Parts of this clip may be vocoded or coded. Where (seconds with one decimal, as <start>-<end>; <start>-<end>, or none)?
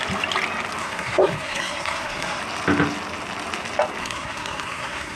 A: 0.8-2.4; 4.0-5.2